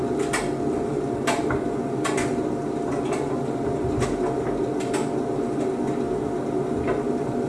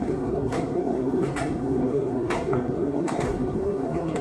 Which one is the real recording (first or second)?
first